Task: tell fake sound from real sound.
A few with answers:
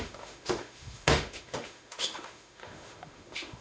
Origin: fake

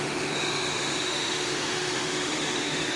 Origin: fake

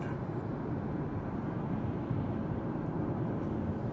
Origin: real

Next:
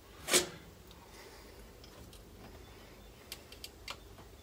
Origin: real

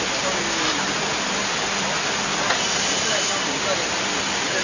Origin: real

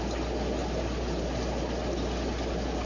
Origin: real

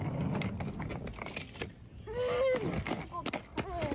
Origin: real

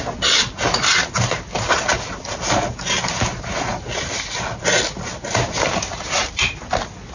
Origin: real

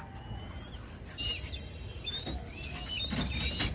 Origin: real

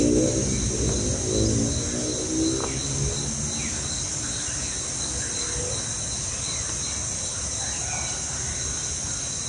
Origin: real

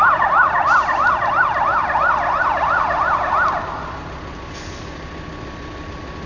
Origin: real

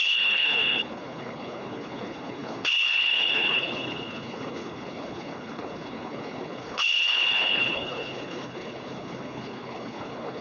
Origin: fake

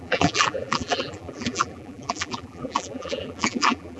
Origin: fake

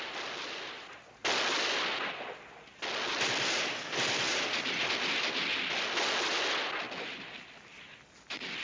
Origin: real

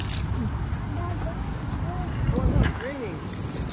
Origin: real